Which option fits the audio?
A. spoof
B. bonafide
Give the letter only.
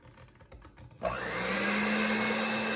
B